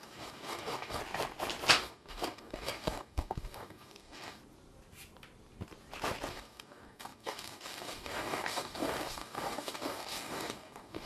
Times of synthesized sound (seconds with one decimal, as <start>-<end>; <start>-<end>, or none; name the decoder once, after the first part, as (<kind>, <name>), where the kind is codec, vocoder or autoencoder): 0.0-1.0 (codec, DAC); 1.7-4.4; 6.3-11.1